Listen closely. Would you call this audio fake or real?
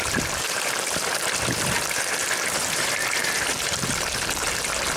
fake